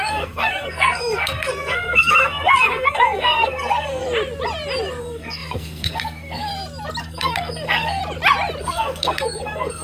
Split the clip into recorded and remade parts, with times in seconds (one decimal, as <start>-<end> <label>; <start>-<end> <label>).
0.0-4.0 remade; 4.0-5.0 recorded; 5.0-6.5 remade; 6.5-7.0 recorded; 7.0-8.0 remade; 8.0-8.6 recorded; 8.6-9.8 remade